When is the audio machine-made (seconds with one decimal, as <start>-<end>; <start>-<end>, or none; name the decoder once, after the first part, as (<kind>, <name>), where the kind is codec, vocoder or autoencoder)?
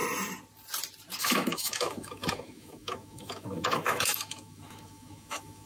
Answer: 1.2-5.7 (autoencoder, DAC-VAE)